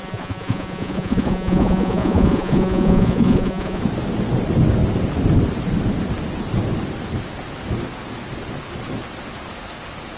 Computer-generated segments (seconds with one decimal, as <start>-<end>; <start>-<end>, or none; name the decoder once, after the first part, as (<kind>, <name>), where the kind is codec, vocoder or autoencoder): 0.0-3.8 (vocoder, Vocos)